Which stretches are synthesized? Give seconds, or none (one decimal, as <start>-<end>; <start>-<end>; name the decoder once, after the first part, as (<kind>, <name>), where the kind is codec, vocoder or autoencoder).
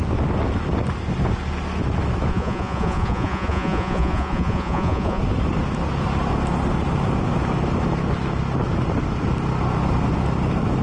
2.3-5.2 (vocoder, Vocos)